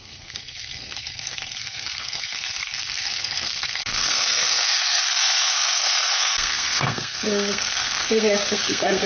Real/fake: fake